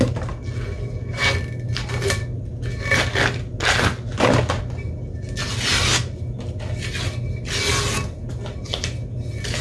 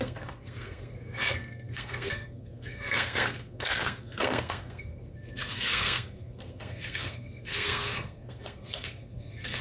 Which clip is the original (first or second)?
first